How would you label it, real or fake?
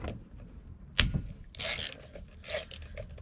real